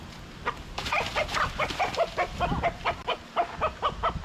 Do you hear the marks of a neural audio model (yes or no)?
no